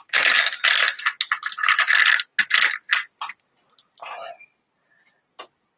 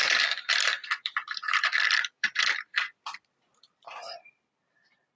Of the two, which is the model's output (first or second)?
second